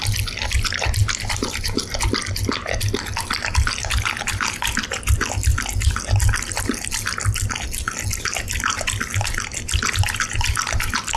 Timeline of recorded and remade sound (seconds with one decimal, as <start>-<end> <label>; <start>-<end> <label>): 0.0-11.2 recorded